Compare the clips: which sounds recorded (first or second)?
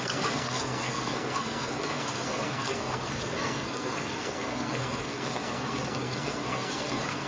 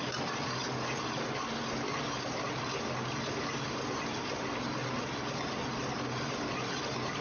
second